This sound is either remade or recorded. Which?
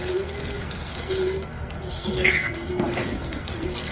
remade